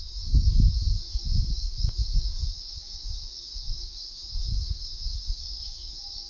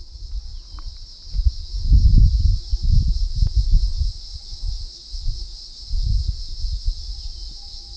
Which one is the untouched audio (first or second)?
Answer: second